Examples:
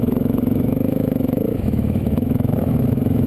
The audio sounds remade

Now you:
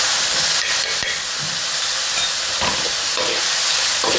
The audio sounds recorded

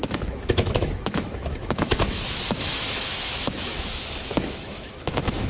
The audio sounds remade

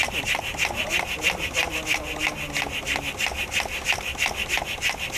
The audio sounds recorded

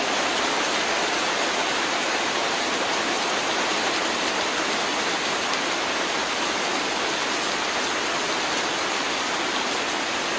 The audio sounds recorded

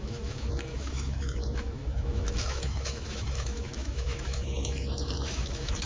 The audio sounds remade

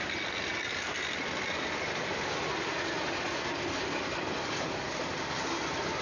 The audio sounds recorded